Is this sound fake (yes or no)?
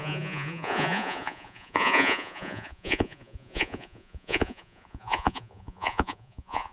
yes